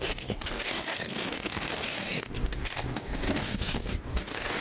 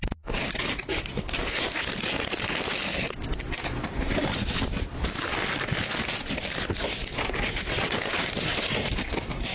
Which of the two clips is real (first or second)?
second